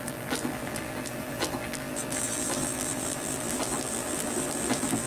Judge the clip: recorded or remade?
remade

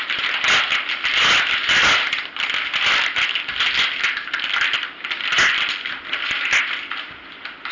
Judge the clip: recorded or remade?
recorded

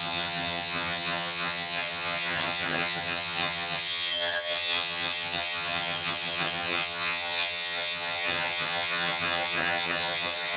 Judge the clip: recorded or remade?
remade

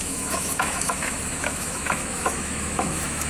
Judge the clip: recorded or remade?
remade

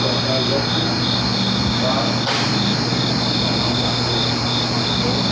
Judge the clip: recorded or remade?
recorded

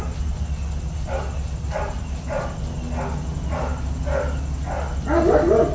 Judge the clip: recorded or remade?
recorded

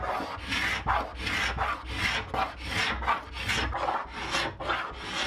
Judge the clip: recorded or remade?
recorded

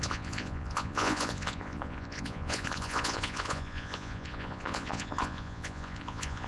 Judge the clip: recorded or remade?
remade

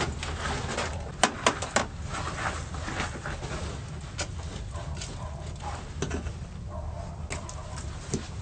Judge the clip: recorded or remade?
recorded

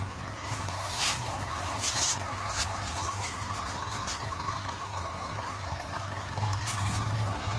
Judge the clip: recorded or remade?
remade